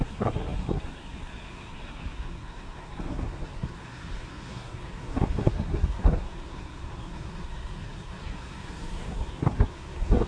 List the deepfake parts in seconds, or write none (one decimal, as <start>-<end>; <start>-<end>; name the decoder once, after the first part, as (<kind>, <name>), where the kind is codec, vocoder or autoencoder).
0.0-10.3 (codec, SNAC)